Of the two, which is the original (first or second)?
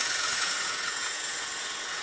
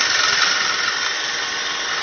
second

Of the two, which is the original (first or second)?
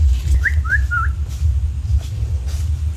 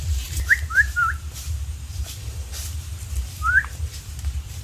first